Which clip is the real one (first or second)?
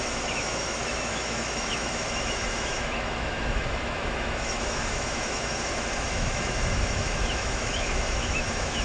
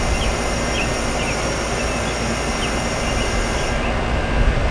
second